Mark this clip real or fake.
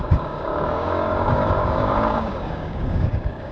fake